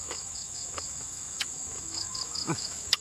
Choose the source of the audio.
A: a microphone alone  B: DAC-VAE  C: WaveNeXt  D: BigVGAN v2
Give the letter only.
B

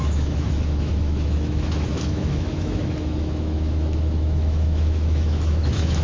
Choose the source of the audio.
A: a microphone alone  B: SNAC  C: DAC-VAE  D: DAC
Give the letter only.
C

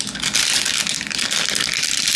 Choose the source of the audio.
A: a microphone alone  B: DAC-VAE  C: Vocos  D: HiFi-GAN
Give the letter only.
A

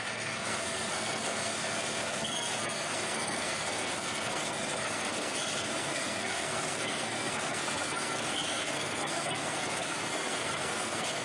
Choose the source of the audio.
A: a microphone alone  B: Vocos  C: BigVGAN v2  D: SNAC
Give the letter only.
D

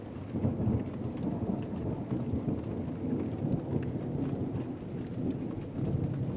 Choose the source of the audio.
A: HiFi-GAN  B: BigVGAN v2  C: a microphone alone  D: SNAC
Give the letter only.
C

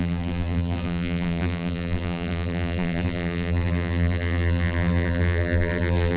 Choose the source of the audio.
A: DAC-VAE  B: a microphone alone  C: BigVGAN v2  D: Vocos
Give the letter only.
C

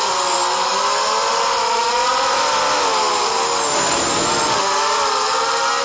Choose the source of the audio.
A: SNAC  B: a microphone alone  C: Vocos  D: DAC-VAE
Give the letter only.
B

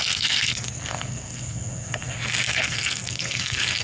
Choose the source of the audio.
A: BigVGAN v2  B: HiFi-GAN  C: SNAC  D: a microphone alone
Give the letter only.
C